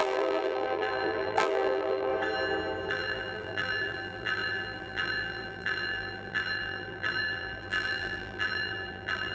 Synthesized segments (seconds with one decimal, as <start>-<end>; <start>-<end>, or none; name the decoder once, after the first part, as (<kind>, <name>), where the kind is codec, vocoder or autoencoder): 0.0-2.1 (vocoder, BigVGAN v2); 2.9-9.3